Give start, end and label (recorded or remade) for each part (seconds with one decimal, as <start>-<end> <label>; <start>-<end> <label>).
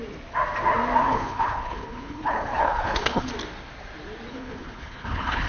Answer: 0.0-1.0 recorded; 1.0-3.3 remade; 3.3-4.3 recorded; 4.3-5.5 remade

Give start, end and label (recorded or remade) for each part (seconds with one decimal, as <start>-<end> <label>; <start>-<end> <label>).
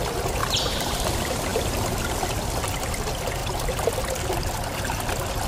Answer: 0.0-0.4 recorded; 0.4-1.1 remade; 1.1-5.5 recorded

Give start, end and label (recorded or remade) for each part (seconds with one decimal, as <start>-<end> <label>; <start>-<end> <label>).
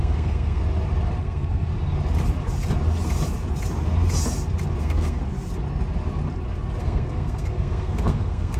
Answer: 0.0-0.6 remade; 0.6-1.2 recorded; 1.2-1.7 remade; 1.7-4.8 recorded; 4.8-5.2 remade; 5.2-6.8 recorded; 6.8-8.6 remade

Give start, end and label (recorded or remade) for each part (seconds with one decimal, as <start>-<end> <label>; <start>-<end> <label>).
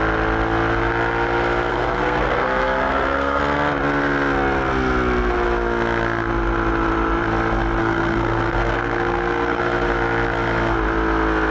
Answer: 0.0-1.7 recorded; 1.7-3.4 remade; 3.4-7.8 recorded; 7.8-9.6 remade; 9.6-11.5 recorded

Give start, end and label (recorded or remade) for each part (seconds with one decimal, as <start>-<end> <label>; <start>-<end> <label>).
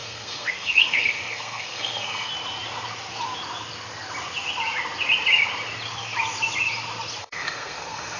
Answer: 0.0-2.3 remade; 2.3-7.2 recorded; 7.2-8.2 remade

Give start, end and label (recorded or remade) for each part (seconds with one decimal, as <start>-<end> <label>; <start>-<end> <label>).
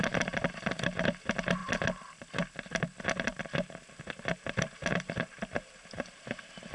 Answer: 0.0-6.7 recorded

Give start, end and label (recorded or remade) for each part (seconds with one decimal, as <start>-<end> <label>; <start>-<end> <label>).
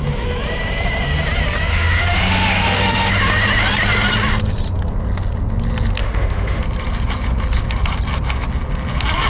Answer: 0.0-1.7 recorded; 1.7-3.1 remade; 3.1-6.0 recorded; 6.0-6.6 remade; 6.6-9.3 recorded